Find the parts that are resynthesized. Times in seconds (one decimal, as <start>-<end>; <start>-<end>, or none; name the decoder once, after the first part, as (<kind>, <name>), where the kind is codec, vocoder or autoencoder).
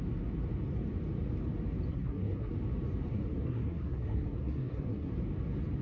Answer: 1.9-2.5 (codec, SNAC); 3.1-5.1